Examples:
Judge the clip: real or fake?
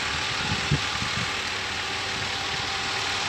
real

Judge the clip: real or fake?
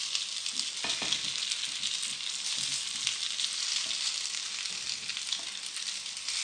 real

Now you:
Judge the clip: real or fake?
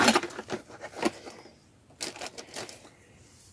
real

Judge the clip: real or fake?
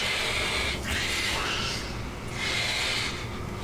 real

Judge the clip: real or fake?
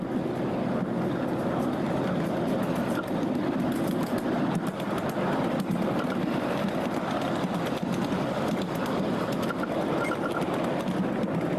real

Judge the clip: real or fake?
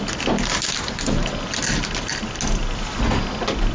real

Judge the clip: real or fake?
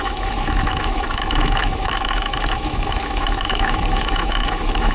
fake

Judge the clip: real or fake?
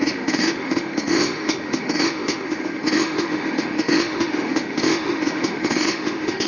fake